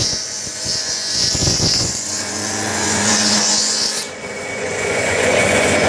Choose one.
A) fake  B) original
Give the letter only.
A